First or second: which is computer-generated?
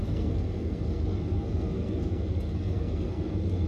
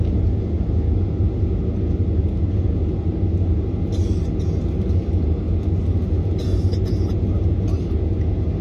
first